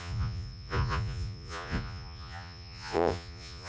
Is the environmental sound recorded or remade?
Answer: remade